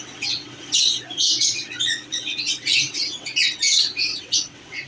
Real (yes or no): no